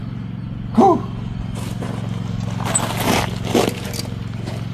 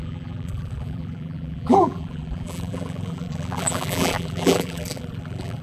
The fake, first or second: second